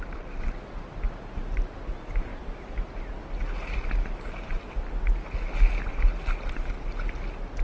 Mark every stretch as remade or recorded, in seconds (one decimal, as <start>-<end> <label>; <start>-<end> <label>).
0.0-7.6 recorded